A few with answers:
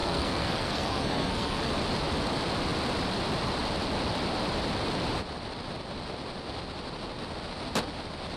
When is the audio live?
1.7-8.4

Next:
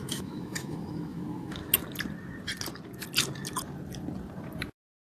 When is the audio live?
1.6-5.1

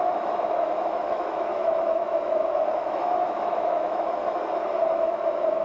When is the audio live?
4.2-4.9